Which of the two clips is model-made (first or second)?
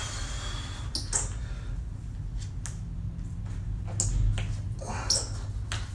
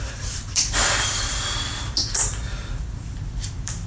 second